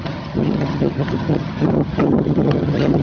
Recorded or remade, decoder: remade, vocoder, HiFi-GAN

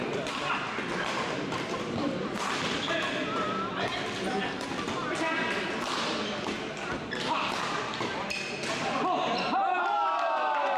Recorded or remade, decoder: recorded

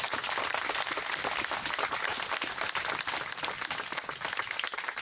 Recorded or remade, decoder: recorded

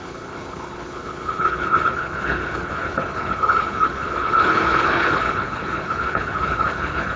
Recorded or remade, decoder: remade, codec, HILCodec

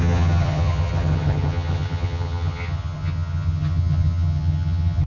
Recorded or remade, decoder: remade, vocoder, HiFi-GAN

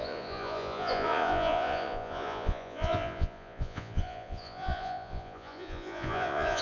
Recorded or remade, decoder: remade, vocoder, Vocos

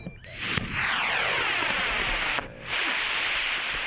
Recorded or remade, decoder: remade, vocoder, BigVGAN v2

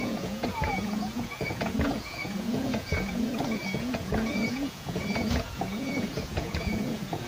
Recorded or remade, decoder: remade, vocoder, Vocos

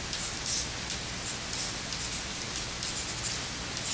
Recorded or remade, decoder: recorded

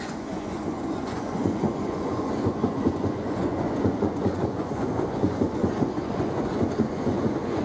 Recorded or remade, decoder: remade, vocoder, Vocos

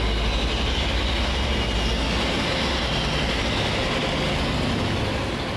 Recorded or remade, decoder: recorded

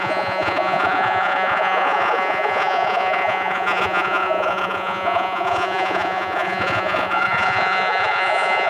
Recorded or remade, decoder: remade, vocoder, Vocos